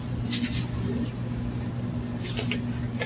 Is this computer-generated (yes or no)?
no